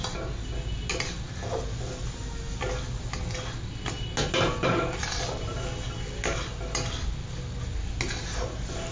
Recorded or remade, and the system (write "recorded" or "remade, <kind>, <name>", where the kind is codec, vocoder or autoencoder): recorded